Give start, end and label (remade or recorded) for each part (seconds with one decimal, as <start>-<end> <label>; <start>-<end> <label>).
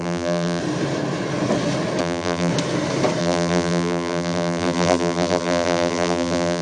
0.0-0.6 remade; 0.6-2.0 recorded; 2.0-2.5 remade; 2.5-3.2 recorded; 3.2-6.6 remade